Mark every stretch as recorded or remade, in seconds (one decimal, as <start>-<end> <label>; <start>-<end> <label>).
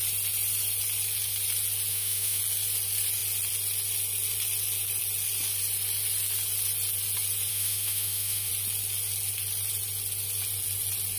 0.0-1.9 recorded; 1.9-2.4 remade; 2.4-7.5 recorded; 7.5-8.5 remade; 8.5-11.2 recorded